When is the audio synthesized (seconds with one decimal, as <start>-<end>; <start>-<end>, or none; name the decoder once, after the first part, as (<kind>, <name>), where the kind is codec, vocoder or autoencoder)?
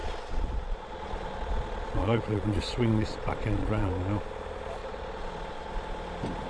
0.0-3.9 (vocoder, Vocos); 4.8-5.7